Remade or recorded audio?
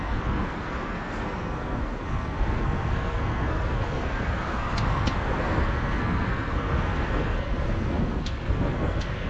remade